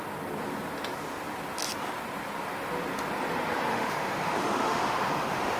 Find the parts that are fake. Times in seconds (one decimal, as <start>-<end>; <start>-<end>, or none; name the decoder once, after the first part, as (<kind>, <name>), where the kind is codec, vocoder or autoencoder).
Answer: 3.7-5.6 (autoencoder, DAC-VAE)